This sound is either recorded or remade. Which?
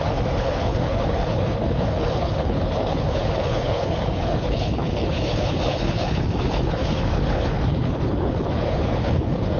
remade